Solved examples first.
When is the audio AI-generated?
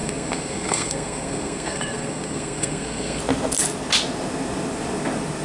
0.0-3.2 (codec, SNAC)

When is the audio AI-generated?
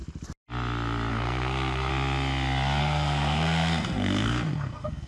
1.1-1.9 (codec, SNAC); 2.8-5.1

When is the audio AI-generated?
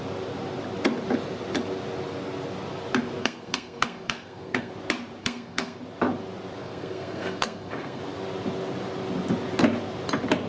3.2-4.7 (codec, SNAC); 5.2-5.8; 6.6-8.0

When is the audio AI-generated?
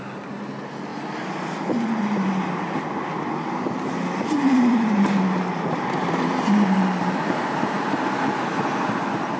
none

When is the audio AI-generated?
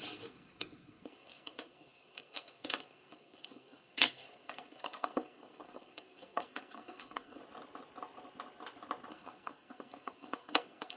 0.0-7.4 (codec, SNAC); 9.1-11.0